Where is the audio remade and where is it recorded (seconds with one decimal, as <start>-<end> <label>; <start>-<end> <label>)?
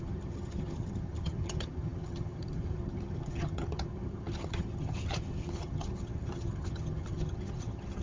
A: 0.0-8.0 remade